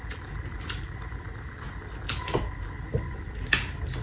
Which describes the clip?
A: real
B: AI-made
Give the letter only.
A